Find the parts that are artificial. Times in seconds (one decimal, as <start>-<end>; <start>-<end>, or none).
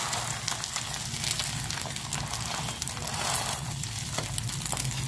none